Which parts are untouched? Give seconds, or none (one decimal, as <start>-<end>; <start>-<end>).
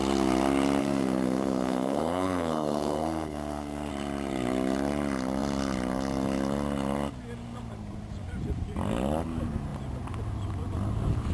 0.0-0.8; 3.9-11.3